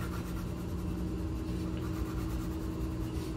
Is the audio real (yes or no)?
yes